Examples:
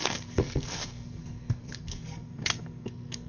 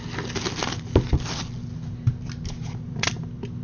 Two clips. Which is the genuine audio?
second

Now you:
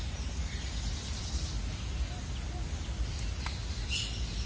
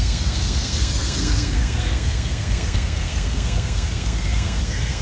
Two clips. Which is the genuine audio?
first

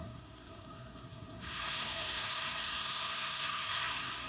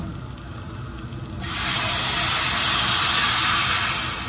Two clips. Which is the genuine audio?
second